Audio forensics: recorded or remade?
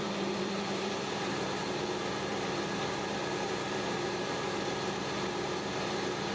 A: remade